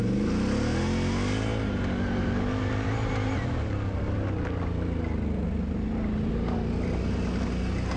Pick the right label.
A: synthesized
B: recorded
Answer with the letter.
B